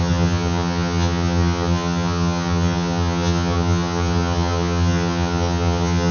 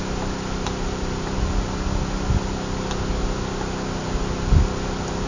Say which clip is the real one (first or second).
second